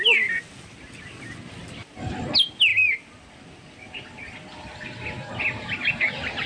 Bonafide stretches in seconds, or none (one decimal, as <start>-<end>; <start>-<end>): 0.0-6.5